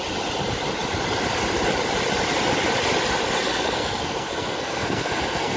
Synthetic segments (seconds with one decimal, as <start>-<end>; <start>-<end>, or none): 3.4-5.6